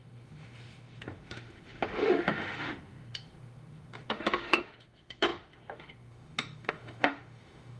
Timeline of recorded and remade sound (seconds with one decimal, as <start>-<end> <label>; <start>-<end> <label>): 0.0-7.8 remade